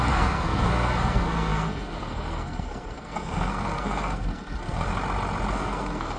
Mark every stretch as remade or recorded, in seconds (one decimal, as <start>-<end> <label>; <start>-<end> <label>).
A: 0.0-4.9 remade; 4.9-5.5 recorded; 5.5-6.2 remade